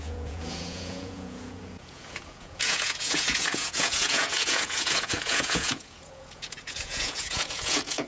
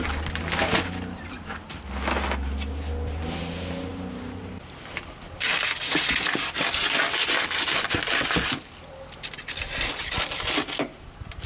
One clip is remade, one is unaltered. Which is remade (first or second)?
first